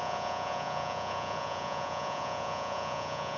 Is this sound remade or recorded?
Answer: remade